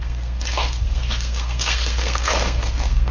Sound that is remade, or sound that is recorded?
remade